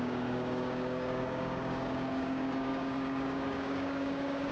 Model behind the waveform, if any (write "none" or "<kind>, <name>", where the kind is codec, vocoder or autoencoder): codec, DAC